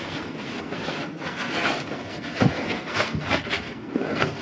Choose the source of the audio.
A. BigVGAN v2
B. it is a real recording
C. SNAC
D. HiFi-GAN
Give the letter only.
C